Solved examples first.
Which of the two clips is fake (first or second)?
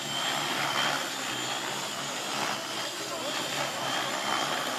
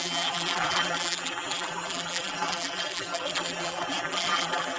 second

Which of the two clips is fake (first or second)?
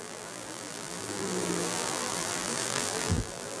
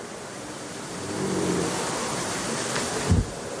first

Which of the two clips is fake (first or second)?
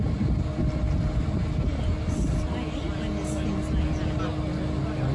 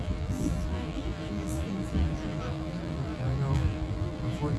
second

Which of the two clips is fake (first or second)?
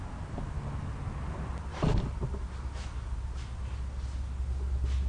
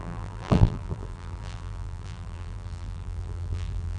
second